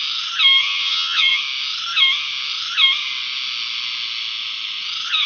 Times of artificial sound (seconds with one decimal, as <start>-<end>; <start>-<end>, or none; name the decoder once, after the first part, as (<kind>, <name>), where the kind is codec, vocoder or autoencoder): 0.6-1.4 (vocoder, HiFi-GAN)